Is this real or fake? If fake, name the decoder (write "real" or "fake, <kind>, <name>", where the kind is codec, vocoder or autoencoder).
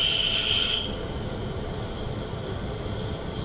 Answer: real